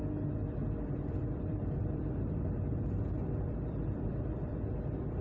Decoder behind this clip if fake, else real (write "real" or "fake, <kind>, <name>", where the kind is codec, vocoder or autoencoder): fake, vocoder, BigVGAN v2